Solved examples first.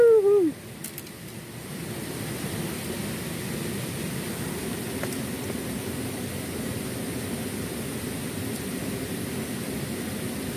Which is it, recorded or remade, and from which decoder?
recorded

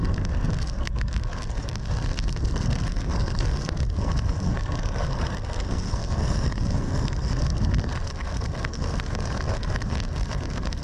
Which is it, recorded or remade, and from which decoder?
remade, codec, SNAC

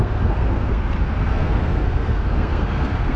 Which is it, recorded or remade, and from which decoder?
remade, codec, SNAC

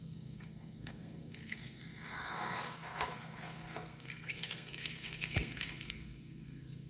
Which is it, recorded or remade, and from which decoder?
remade, codec, SNAC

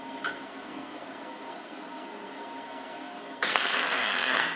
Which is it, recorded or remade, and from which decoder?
remade, codec, SNAC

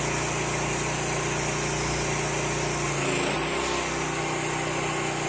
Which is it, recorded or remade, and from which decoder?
recorded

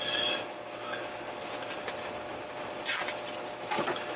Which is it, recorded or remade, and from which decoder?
recorded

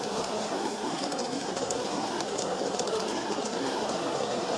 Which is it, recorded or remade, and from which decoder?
remade, codec, SNAC